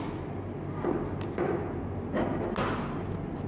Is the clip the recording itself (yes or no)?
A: yes